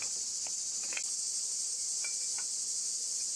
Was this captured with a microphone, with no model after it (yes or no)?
yes